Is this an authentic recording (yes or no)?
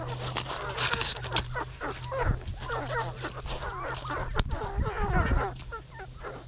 yes